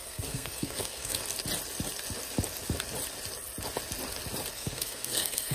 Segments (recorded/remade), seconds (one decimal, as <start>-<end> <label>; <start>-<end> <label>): 0.0-1.2 remade; 1.2-4.5 recorded; 4.5-5.5 remade